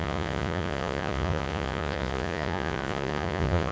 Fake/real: fake